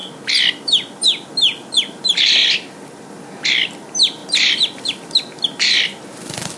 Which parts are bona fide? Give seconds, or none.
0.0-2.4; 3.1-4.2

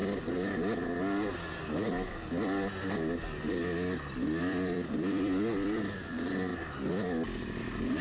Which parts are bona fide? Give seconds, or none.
0.0-4.4; 6.5-7.6

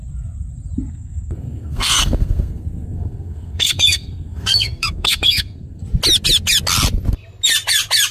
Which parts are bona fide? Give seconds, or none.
0.0-0.9; 5.8-8.1

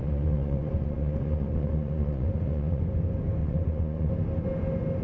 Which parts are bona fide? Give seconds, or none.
2.8-3.4; 4.1-5.0

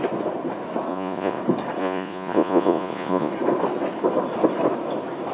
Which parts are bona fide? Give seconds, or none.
0.0-0.9; 1.4-1.8; 3.3-5.3